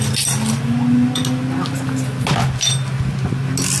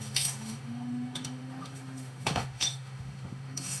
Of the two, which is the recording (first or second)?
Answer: first